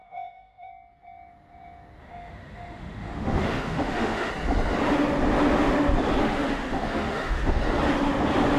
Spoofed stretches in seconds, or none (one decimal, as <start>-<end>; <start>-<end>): 0.0-0.7; 2.0-4.3; 6.2-7.6